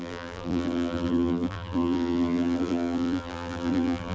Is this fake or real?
fake